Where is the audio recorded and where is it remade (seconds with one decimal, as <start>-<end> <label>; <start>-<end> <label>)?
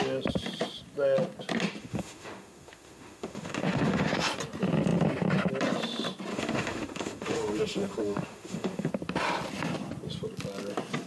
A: 0.0-1.8 recorded; 1.8-4.1 remade; 4.1-6.3 recorded; 6.3-8.9 remade; 8.9-11.1 recorded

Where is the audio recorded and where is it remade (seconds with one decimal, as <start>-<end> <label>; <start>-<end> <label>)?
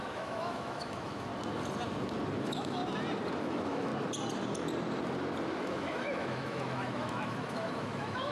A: 0.0-1.3 remade; 1.3-2.4 recorded; 2.4-2.8 remade; 2.8-3.4 recorded; 3.4-3.9 remade; 3.9-5.6 recorded; 5.6-8.3 remade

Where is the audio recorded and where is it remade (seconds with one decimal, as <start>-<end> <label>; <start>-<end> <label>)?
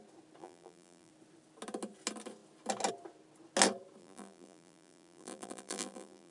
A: 0.0-0.4 recorded; 0.4-1.1 remade; 1.1-4.0 recorded; 4.0-6.3 remade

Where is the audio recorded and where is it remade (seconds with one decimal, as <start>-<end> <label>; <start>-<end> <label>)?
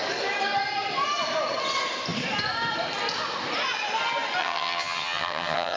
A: 0.0-4.4 recorded; 4.4-5.8 remade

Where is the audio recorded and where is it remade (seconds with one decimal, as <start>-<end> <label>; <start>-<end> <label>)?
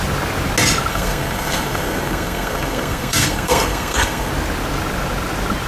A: 0.0-0.9 recorded; 0.9-4.3 remade; 4.3-5.7 recorded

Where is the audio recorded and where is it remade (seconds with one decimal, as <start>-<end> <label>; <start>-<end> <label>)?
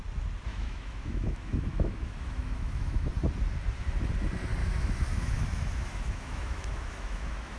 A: 0.0-0.5 recorded; 0.5-3.1 remade; 3.1-4.6 recorded; 4.6-7.6 remade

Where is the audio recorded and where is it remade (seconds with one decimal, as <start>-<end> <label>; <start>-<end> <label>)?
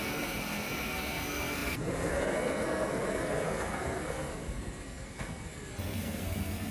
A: 0.0-6.7 remade